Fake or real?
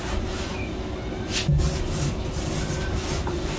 real